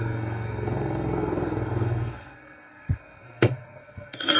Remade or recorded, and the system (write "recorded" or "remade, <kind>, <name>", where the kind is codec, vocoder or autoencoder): remade, codec, SNAC